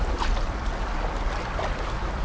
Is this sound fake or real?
real